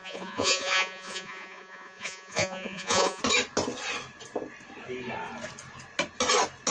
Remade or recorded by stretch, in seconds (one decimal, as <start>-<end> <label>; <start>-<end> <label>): 0.0-3.2 remade; 3.2-6.7 recorded